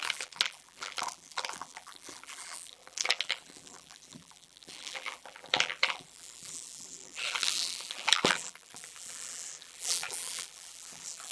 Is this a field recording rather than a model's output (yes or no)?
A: no